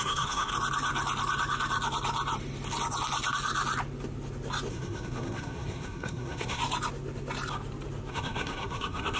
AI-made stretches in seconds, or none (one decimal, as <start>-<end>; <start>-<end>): 0.0-0.5; 4.7-6.6; 8.1-9.2